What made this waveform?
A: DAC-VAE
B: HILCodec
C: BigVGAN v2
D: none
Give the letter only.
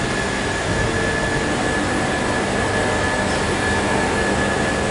D